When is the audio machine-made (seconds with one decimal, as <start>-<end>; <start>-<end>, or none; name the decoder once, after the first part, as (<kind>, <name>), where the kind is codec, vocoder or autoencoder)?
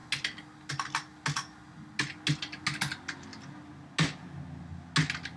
none